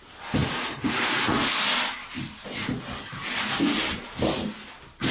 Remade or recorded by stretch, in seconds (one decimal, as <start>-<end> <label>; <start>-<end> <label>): 0.0-0.4 recorded; 0.4-1.5 remade; 1.5-5.1 recorded

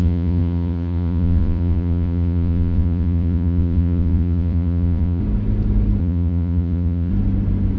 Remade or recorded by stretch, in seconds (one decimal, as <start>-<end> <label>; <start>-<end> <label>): 0.0-5.2 remade; 5.2-6.0 recorded; 6.0-7.1 remade; 7.1-7.8 recorded

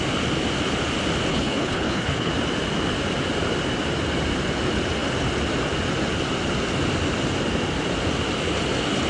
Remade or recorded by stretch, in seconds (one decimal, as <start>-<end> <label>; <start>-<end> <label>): 0.0-1.3 recorded; 1.3-2.3 remade; 2.3-9.1 recorded

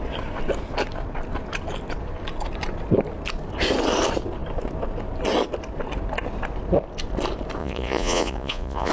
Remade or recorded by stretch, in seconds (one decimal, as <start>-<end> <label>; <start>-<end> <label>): 0.0-7.6 recorded; 7.6-8.9 remade

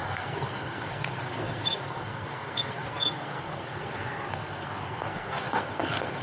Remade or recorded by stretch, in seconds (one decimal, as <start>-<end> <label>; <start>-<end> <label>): 0.0-6.2 remade

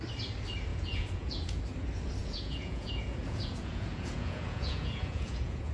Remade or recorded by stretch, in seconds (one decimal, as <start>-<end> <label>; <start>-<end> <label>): 0.0-0.7 recorded; 0.7-1.6 remade; 1.6-2.2 recorded; 2.2-5.7 remade

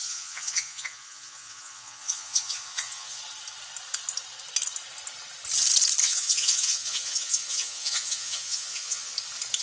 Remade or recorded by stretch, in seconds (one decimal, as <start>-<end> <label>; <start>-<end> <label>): 0.0-3.2 remade; 3.2-6.0 recorded; 6.0-9.1 remade; 9.1-9.6 recorded

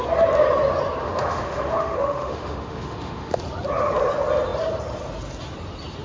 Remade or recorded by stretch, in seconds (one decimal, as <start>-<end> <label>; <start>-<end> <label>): 0.0-1.0 recorded; 1.0-3.4 remade; 3.4-6.0 recorded